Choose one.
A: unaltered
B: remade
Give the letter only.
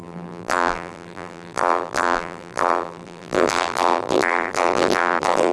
B